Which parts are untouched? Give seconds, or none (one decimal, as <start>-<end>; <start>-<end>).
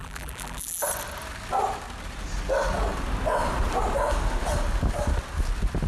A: 0.8-5.9